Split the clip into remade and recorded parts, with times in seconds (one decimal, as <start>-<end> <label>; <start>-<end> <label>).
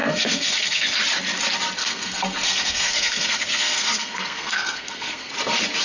0.0-1.0 remade; 1.0-1.8 recorded; 1.8-5.3 remade; 5.3-5.8 recorded